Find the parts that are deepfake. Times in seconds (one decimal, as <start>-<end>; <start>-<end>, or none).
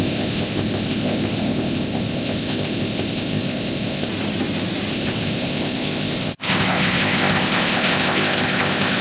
0.0-4.1; 4.9-9.0